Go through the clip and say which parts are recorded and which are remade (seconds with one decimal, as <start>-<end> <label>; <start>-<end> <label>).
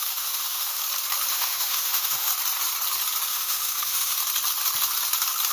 0.0-0.8 remade; 0.8-1.3 recorded; 1.3-2.3 remade; 2.3-3.3 recorded; 3.3-4.2 remade; 4.2-5.5 recorded